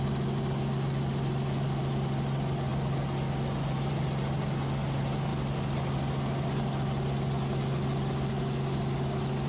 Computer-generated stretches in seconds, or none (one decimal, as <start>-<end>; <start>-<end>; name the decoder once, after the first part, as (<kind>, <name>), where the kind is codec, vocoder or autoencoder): none